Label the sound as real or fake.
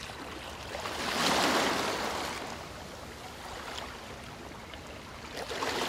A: real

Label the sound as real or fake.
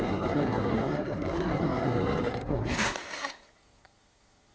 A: fake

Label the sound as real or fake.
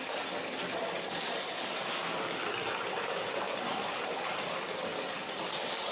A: real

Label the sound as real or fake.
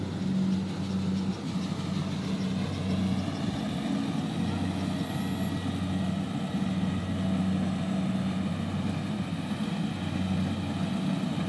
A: real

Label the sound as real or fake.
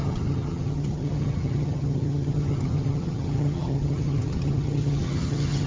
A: fake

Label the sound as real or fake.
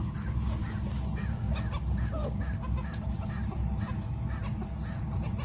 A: real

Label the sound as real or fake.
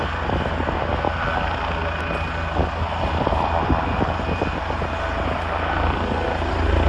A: real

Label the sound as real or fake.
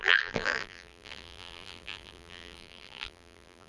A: fake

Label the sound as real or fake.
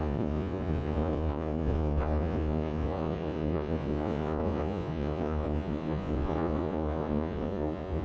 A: fake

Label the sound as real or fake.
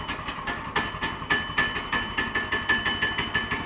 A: real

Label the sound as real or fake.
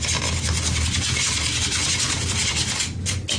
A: real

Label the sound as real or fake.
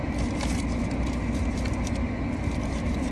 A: real